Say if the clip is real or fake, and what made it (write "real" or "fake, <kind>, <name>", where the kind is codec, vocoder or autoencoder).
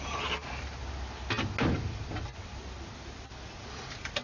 real